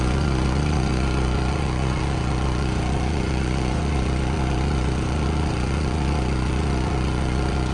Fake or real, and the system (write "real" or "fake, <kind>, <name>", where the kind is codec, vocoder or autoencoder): fake, vocoder, Vocos